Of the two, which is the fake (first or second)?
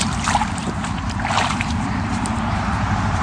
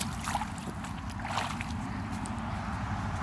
first